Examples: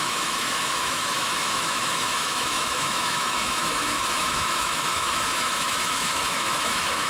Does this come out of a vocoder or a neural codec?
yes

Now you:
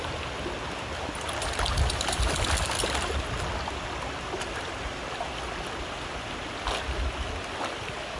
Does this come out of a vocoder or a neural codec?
no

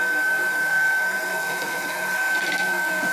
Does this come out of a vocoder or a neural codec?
yes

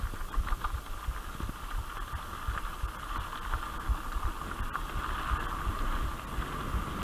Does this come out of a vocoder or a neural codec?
no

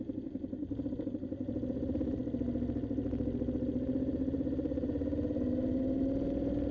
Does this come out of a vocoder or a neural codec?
no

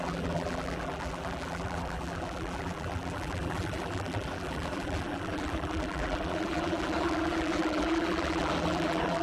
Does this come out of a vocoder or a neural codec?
yes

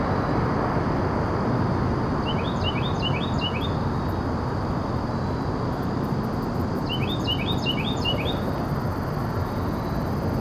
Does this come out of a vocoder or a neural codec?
no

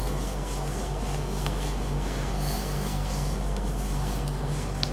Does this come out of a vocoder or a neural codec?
yes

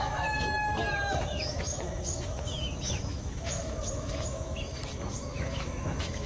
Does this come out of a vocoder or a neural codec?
yes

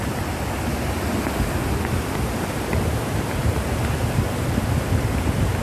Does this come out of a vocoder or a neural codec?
no